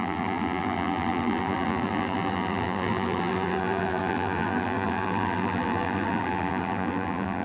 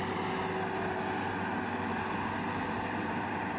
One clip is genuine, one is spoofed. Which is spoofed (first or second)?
first